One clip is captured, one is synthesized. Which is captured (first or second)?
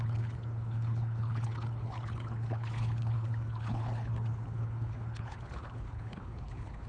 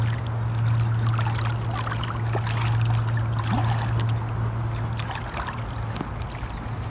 second